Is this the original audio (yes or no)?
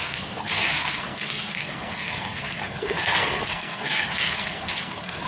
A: no